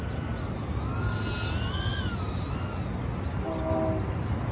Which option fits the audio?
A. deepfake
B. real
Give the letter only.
B